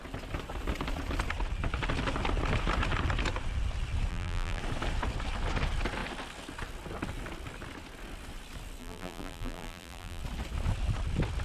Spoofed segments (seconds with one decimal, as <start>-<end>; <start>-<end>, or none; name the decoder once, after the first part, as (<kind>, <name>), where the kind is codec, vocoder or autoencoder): 4.1-4.6 (vocoder, BigVGAN v2); 8.8-10.2